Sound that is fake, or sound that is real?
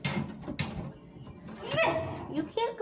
real